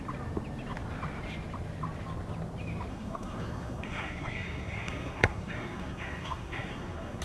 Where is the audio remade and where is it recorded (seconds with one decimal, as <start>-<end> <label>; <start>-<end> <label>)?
0.0-2.9 recorded; 2.9-7.2 remade